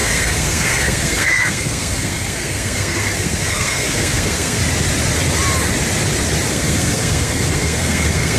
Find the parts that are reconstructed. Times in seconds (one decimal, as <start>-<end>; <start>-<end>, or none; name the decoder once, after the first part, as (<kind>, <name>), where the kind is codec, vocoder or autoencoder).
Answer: 0.0-4.6 (codec, SNAC); 6.5-8.4